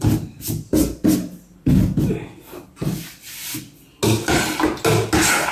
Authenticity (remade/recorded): recorded